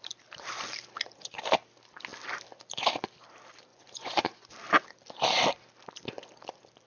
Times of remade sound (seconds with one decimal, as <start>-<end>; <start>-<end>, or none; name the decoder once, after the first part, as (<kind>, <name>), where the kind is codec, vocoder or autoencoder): 3.7-4.5 (vocoder, Vocos)